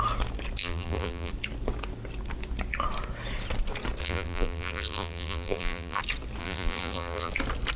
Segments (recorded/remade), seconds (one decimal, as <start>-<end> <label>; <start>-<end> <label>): 0.0-0.6 recorded; 0.6-1.3 remade; 1.3-4.0 recorded; 4.0-6.0 remade; 6.0-6.4 recorded; 6.4-7.3 remade; 7.3-7.8 recorded